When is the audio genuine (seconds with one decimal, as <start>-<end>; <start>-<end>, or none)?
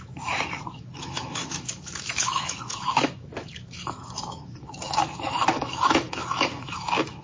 none